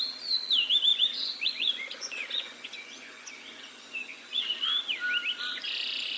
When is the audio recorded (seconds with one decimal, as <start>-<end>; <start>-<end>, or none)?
0.0-0.9; 4.6-6.2